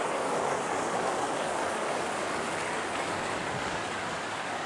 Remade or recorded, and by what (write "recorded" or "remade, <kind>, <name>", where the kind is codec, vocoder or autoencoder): remade, codec, DAC